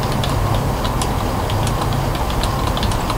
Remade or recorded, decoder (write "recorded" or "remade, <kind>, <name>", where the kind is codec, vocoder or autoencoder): recorded